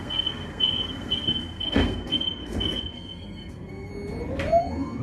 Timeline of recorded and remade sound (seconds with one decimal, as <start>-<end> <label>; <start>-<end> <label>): 0.0-3.9 remade; 3.9-4.6 recorded; 4.6-5.0 remade